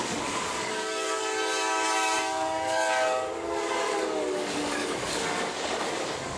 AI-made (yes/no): yes